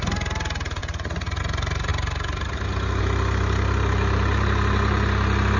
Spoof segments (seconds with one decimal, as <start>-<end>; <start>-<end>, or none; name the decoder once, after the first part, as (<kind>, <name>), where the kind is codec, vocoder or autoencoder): 0.8-1.4 (vocoder, Vocos)